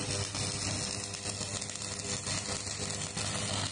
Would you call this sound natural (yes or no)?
yes